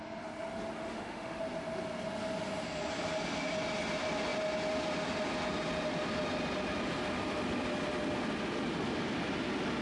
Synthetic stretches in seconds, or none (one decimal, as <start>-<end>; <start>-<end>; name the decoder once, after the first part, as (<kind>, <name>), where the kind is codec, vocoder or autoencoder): 0.8-1.4 (autoencoder, DAC-VAE)